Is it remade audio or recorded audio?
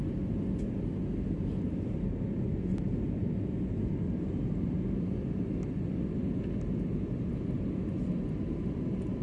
recorded